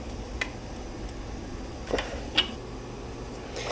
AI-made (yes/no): no